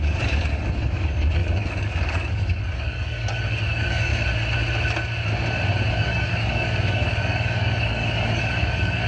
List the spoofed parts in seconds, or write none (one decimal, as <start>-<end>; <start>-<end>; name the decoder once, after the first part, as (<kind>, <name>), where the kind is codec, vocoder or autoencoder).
0.0-4.1 (codec, DAC); 5.9-9.1